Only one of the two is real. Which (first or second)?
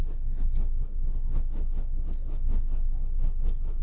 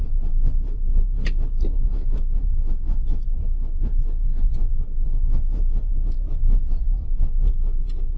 first